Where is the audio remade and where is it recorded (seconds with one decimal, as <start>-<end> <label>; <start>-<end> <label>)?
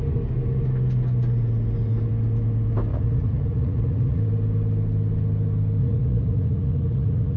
0.0-2.9 recorded; 2.9-4.2 remade; 4.2-5.8 recorded; 5.8-7.4 remade